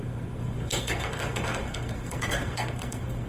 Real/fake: fake